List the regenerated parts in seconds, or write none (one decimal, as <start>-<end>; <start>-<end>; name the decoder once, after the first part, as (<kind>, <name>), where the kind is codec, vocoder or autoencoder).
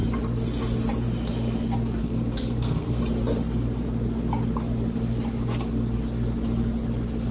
2.0-3.0 (codec, SNAC)